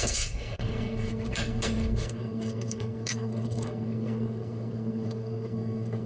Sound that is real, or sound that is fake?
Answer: fake